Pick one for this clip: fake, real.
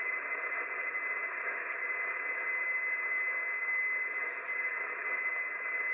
real